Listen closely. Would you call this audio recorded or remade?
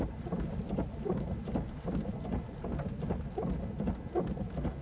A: recorded